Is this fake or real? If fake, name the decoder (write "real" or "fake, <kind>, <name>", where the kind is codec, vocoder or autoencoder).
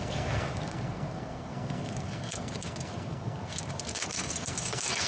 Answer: fake, codec, SNAC